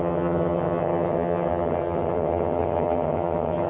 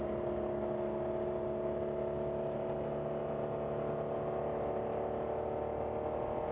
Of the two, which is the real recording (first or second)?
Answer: second